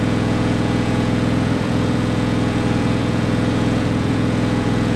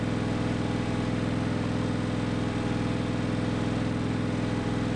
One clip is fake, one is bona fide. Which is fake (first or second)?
first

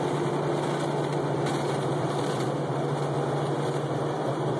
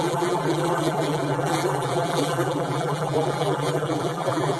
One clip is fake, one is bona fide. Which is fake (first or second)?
second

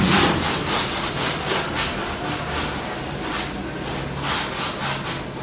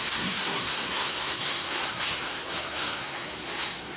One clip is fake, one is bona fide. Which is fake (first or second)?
second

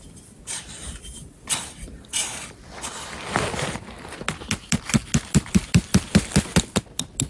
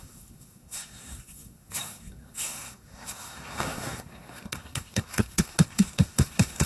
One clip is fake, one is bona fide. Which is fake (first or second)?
second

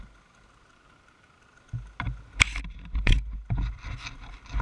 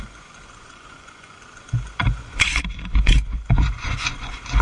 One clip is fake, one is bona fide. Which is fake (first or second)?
second